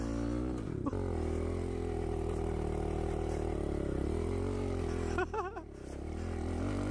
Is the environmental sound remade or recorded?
recorded